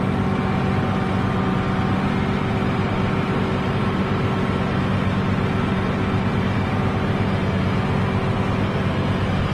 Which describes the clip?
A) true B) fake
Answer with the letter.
A